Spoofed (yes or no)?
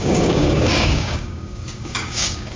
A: yes